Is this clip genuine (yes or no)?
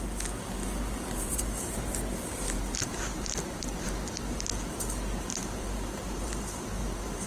no